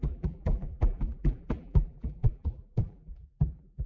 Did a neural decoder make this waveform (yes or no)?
yes